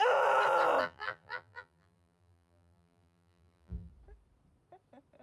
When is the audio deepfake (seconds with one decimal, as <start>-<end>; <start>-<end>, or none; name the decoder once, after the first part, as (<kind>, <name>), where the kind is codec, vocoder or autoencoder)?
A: 0.8-3.9 (vocoder, BigVGAN v2)